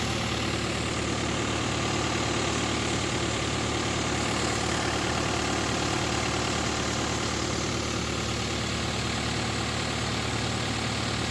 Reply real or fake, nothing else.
real